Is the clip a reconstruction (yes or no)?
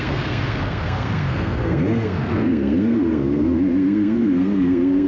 yes